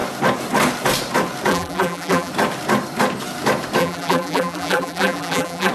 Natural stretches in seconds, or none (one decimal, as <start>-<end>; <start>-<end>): 0.0-1.5; 2.3-3.8